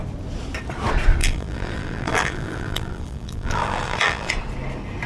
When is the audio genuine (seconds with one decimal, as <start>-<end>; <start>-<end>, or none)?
0.0-1.2; 4.3-5.1